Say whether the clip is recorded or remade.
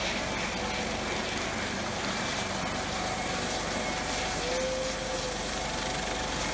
recorded